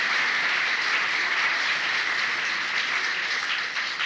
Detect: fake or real real